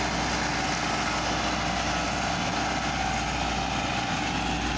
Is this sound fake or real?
real